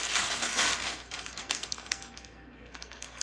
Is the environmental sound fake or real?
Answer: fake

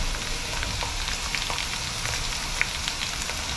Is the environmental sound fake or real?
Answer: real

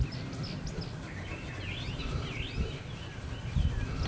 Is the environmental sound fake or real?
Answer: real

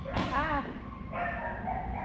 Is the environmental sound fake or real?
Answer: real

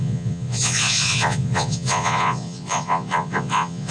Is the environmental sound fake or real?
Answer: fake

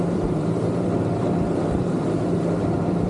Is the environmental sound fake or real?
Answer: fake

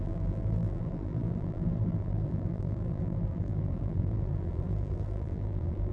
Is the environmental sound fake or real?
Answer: fake